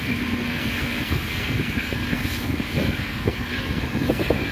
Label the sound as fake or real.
fake